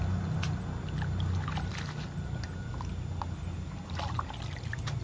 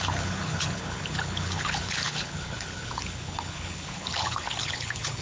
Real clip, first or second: first